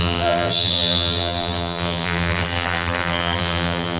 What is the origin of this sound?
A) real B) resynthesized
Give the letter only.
B